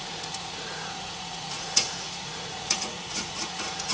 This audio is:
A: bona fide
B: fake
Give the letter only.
B